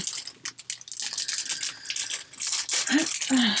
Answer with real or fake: real